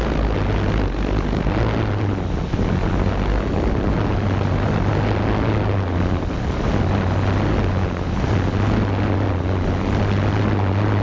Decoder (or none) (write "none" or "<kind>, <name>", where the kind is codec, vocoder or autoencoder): none